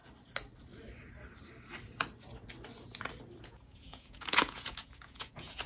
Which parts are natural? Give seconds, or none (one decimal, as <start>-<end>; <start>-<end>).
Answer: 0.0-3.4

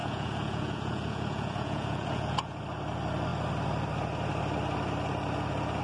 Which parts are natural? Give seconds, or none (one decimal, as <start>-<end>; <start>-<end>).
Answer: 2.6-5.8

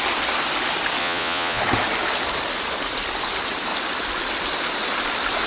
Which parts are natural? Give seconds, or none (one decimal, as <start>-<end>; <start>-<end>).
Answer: 0.0-1.0; 1.6-5.5